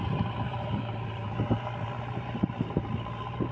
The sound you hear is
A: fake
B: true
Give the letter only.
A